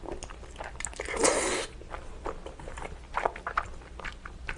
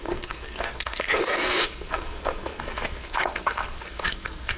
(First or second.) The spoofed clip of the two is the second